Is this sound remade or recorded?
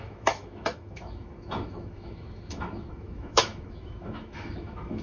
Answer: remade